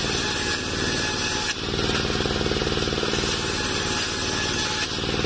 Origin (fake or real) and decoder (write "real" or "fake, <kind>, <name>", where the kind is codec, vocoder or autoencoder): real